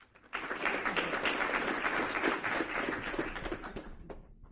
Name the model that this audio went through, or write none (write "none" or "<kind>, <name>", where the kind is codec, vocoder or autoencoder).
none